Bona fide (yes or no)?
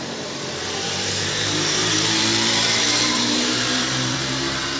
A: no